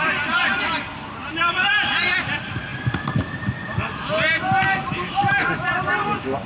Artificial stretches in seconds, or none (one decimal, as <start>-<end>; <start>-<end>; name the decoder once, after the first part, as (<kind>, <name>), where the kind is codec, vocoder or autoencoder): none